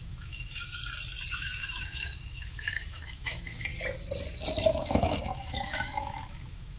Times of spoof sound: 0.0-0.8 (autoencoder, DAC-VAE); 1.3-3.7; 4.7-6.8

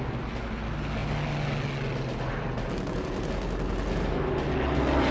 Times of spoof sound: none

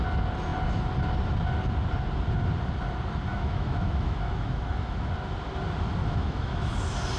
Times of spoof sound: 3.3-5.1 (autoencoder, DAC-VAE); 6.0-6.7

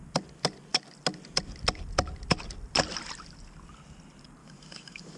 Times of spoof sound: 4.4-5.2 (autoencoder, DAC-VAE)